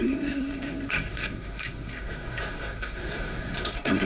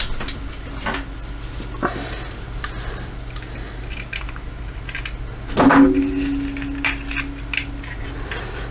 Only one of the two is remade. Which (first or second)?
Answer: first